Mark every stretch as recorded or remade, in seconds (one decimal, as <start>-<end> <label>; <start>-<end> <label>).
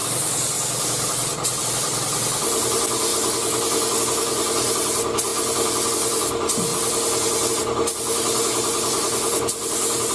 0.0-1.6 remade; 1.6-6.7 recorded; 6.7-7.5 remade; 7.5-10.1 recorded